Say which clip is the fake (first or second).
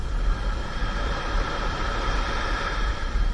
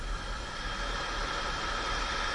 first